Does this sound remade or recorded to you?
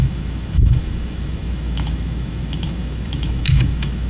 remade